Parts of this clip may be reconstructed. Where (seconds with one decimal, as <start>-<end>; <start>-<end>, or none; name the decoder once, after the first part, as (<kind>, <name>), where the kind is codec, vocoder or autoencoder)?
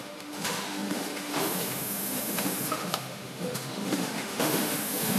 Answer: 0.0-5.2 (autoencoder, DAC-VAE)